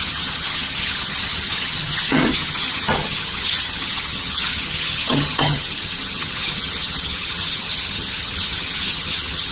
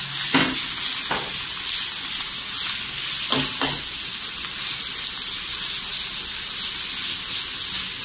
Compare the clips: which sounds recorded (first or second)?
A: second